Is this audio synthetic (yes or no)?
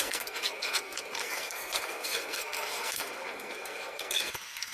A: yes